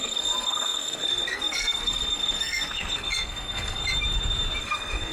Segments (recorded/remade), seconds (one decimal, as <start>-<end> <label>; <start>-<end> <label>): 0.0-3.8 remade; 3.8-4.6 recorded; 4.6-5.1 remade